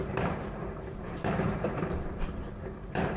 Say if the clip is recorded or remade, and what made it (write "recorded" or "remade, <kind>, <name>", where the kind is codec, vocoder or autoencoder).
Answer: remade, vocoder, BigVGAN v2